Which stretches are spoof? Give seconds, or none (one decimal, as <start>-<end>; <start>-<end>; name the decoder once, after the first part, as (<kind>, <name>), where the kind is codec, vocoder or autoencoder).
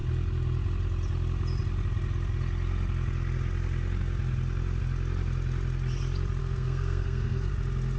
6.4-7.5 (codec, SNAC)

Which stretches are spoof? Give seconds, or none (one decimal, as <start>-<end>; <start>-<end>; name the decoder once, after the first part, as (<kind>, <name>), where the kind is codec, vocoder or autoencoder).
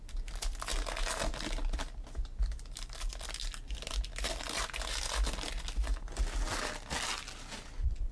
none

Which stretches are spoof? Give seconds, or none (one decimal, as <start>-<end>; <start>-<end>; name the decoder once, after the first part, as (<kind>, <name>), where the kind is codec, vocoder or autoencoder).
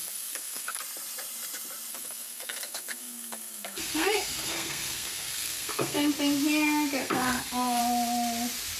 0.0-0.8 (codec, SNAC); 1.9-6.1; 7.0-7.8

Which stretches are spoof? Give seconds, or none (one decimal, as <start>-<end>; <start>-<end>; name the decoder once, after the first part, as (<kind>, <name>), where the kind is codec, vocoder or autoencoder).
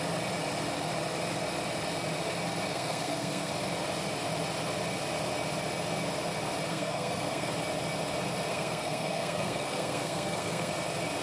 2.7-3.5 (codec, SNAC); 6.7-7.5; 8.5-10.7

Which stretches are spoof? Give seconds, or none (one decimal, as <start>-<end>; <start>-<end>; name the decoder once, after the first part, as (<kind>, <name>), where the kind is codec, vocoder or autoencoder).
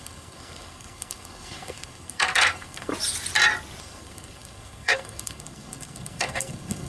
0.0-2.9 (codec, SNAC); 3.8-6.9